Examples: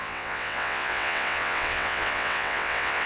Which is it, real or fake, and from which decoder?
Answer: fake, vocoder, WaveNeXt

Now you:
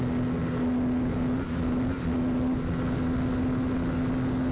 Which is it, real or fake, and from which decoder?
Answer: real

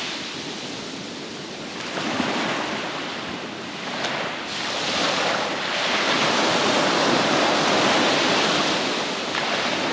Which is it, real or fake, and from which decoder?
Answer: real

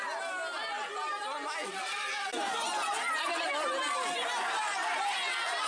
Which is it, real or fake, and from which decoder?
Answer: real